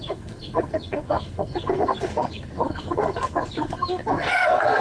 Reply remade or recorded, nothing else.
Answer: remade